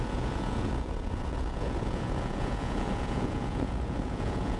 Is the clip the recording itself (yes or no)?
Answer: no